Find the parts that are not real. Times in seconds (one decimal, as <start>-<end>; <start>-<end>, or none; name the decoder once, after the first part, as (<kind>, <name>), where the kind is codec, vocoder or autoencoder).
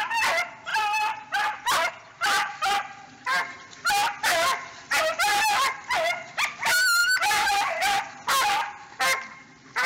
7.0-8.0 (vocoder, BigVGAN v2)